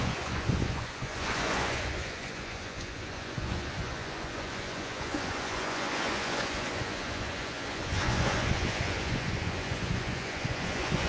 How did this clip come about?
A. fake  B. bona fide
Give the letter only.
A